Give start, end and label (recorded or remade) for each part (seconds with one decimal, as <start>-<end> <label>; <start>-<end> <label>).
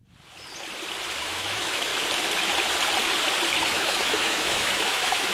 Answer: 0.0-1.2 recorded; 1.2-1.9 remade; 1.9-3.7 recorded; 3.7-5.3 remade